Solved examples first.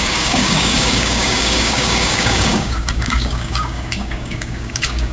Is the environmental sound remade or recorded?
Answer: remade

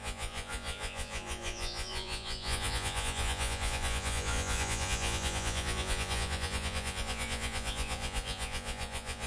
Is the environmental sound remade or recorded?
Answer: remade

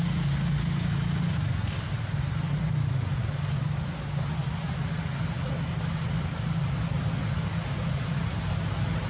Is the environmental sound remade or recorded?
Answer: recorded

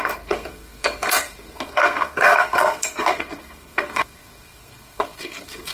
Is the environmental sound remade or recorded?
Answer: remade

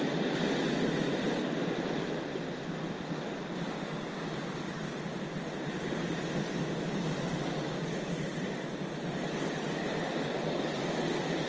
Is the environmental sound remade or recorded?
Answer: recorded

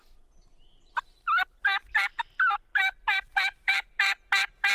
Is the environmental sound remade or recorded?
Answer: recorded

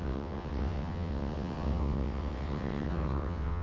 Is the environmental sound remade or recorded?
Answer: remade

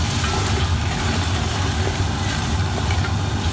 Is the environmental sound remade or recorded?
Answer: recorded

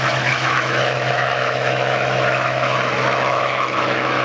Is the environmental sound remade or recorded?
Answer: remade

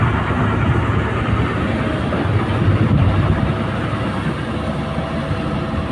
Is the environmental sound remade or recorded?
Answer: recorded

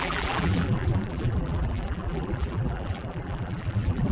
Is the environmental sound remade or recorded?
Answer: remade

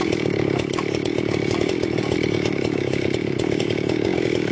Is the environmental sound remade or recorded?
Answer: remade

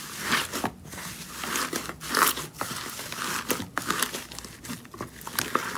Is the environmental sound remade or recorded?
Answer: recorded